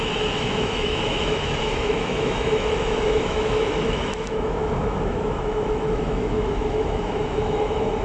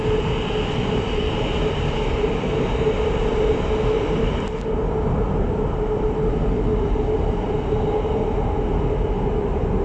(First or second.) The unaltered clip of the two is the second